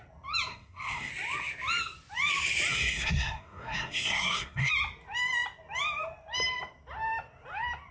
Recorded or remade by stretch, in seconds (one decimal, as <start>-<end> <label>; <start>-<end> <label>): 0.0-0.5 recorded; 0.5-1.1 remade; 1.1-2.7 recorded; 2.7-4.7 remade; 4.7-7.9 recorded